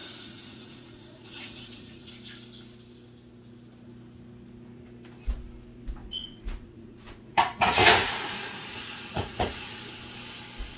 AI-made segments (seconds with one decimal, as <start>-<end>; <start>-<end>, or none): 0.0-2.1; 6.0-9.8